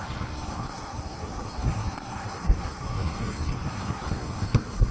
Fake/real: fake